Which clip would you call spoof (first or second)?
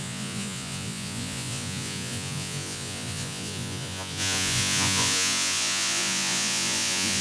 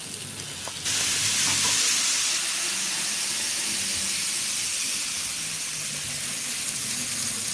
first